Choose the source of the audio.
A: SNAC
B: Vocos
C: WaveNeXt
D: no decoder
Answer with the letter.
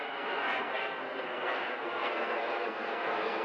A